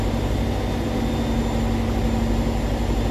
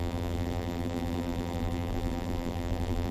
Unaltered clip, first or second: first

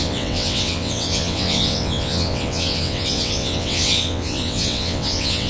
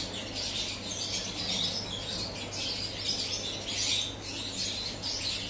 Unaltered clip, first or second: second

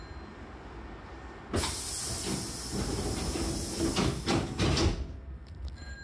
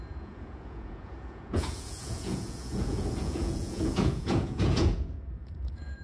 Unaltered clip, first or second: first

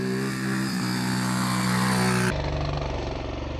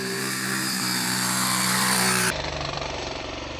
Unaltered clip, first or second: first